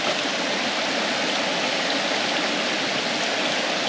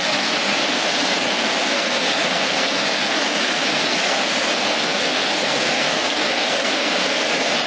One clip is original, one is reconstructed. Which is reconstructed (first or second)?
second